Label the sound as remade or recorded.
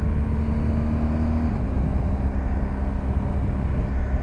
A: recorded